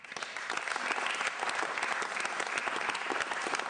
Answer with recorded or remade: recorded